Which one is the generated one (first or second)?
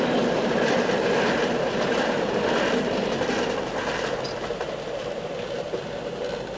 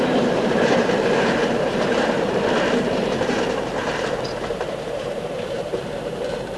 second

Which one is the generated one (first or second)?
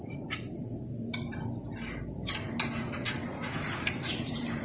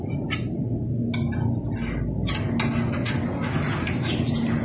first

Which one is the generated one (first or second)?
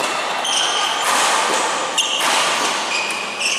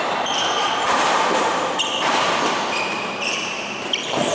second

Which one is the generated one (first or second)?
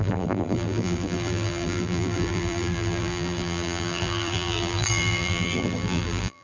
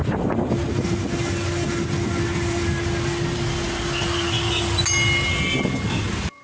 first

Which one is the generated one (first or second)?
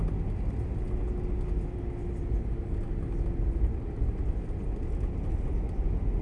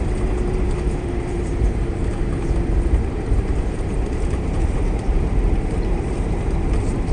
second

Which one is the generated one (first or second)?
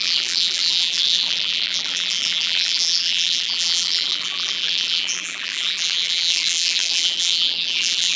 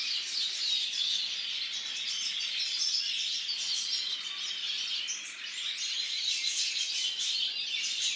first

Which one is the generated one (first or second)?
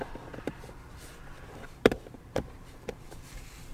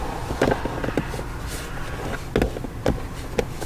first